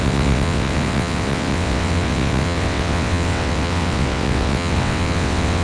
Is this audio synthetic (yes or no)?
yes